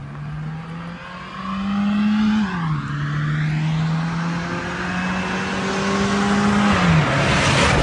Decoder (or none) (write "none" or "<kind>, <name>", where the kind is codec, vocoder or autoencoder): none